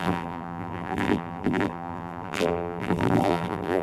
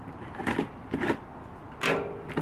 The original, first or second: second